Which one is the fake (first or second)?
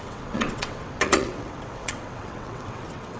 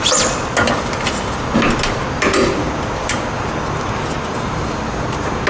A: first